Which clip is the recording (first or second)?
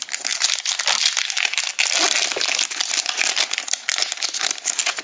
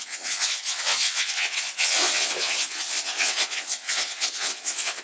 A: first